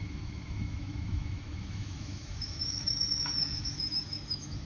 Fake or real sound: fake